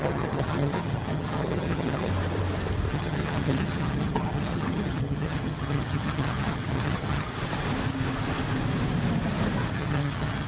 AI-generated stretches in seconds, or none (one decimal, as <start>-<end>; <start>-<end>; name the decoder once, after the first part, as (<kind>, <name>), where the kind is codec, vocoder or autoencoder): 0.0-2.1 (vocoder, HiFi-GAN); 2.9-7.3; 9.7-10.5